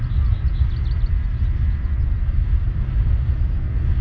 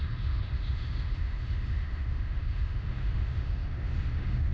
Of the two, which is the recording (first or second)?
first